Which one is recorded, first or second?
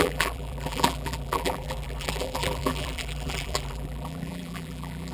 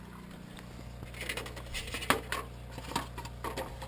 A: second